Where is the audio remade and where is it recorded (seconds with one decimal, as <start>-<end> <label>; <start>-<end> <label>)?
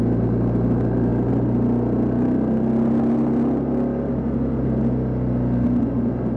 0.0-6.4 recorded